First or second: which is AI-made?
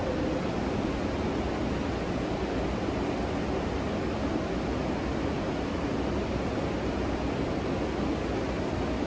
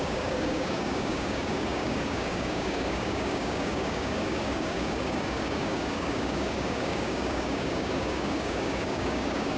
second